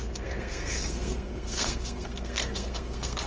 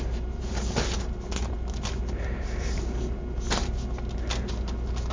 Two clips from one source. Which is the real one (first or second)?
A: second